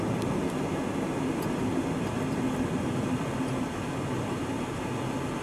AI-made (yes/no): no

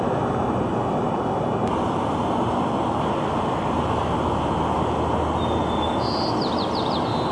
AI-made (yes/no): no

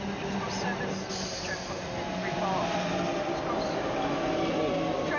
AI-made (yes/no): no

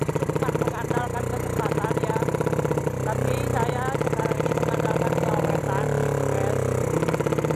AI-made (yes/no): no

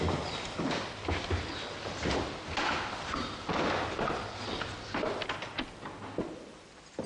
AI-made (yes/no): no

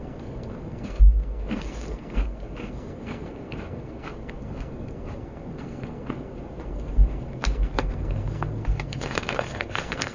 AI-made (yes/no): yes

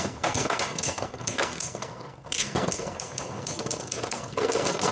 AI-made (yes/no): yes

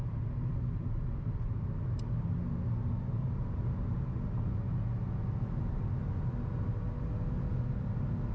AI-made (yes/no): no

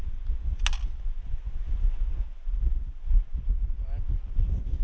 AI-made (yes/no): no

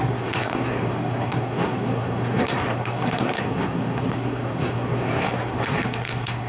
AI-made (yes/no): yes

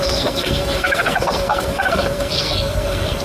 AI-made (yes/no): yes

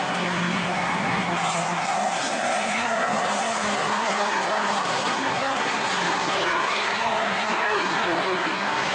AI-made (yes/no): yes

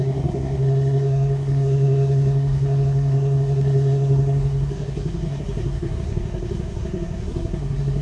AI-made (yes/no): yes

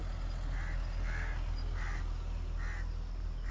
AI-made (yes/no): no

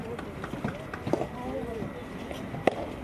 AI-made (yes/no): no